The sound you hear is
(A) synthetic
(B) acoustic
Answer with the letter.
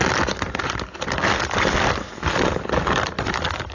B